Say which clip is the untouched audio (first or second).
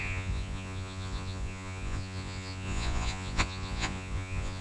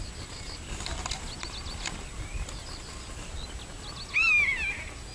second